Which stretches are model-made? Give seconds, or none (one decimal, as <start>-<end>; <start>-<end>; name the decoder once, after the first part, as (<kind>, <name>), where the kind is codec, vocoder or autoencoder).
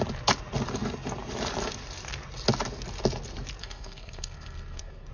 3.6-5.1 (codec, SNAC)